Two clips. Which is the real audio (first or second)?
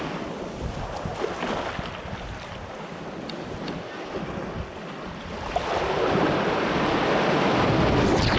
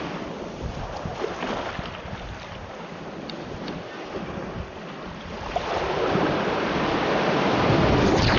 first